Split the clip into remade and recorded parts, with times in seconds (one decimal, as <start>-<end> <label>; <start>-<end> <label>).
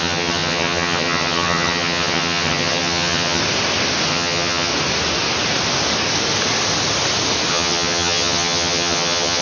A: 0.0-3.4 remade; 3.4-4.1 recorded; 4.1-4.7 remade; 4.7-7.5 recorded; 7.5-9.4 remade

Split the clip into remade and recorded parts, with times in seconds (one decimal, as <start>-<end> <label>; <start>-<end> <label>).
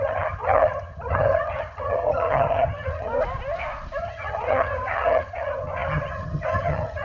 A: 0.0-3.1 remade; 3.1-4.0 recorded; 4.0-7.0 remade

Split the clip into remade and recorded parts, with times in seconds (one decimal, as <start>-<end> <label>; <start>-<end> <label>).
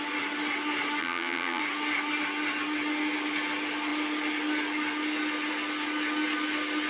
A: 0.0-1.0 recorded; 1.0-1.6 remade; 1.6-6.9 recorded